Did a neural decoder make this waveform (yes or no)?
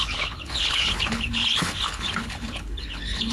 yes